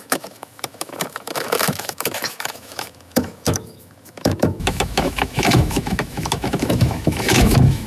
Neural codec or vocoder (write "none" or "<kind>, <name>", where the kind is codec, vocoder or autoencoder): autoencoder, DAC-VAE